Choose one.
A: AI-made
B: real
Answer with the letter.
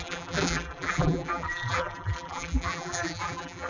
A